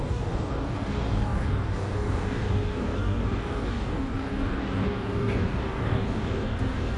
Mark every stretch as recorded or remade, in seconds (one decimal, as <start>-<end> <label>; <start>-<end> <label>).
0.0-7.0 remade